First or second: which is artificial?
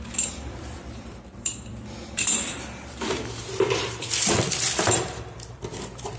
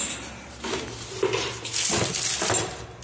first